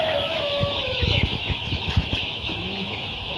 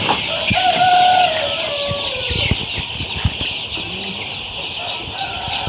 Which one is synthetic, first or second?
first